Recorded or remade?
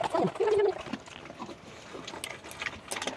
recorded